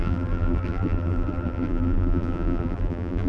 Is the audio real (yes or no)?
no